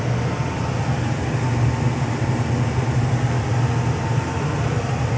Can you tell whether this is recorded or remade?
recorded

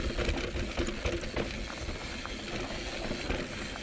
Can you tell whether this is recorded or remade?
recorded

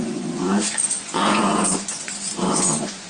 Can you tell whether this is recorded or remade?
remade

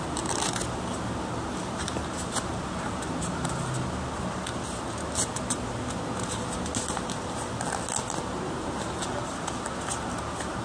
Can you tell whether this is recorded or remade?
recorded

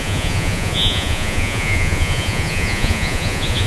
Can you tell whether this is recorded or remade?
remade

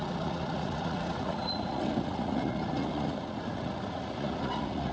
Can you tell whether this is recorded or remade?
remade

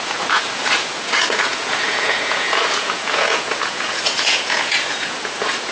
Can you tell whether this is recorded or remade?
remade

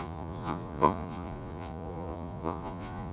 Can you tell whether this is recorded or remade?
remade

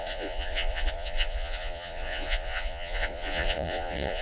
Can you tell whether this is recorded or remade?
remade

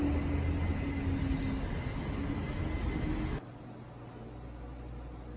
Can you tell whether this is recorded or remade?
recorded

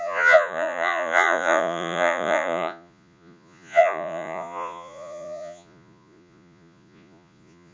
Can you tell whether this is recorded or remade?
remade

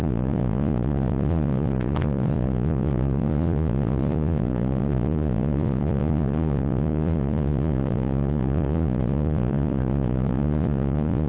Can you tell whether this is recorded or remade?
remade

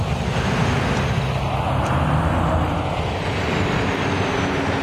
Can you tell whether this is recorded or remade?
recorded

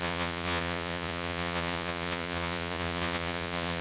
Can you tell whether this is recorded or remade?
remade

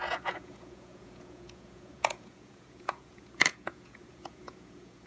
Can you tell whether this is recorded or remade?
remade